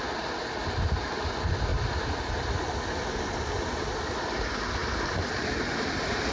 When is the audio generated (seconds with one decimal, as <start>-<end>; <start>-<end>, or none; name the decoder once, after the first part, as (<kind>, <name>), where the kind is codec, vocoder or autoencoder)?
1.7-2.8 (vocoder, BigVGAN v2)